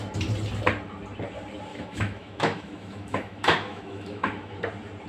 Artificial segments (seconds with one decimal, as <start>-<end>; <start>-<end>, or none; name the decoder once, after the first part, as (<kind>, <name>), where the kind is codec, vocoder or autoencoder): 1.7-4.6 (autoencoder, DAC-VAE)